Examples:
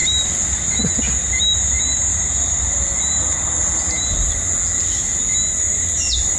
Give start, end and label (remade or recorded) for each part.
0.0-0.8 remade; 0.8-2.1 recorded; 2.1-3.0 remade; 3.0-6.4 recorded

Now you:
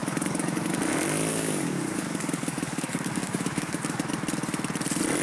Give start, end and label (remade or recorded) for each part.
0.0-0.7 remade; 0.7-1.3 recorded; 1.3-4.1 remade; 4.1-5.2 recorded

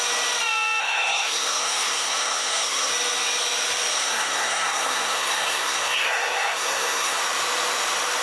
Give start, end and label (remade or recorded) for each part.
0.0-0.8 recorded; 0.8-2.9 remade; 2.9-3.9 recorded; 3.9-7.2 remade; 7.2-8.2 recorded

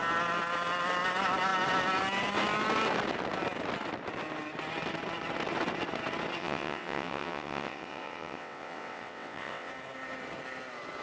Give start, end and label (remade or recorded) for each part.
0.0-6.4 recorded; 6.4-9.7 remade; 9.7-11.0 recorded

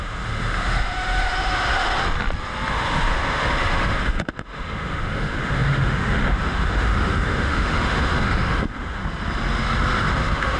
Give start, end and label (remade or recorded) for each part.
0.0-2.0 remade; 2.0-2.7 recorded; 2.7-9.0 remade; 9.0-10.1 recorded; 10.1-10.6 remade

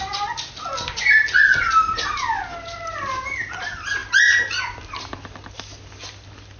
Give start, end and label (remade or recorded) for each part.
0.0-6.6 recorded